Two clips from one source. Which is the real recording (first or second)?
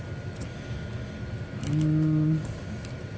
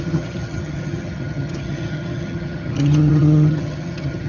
first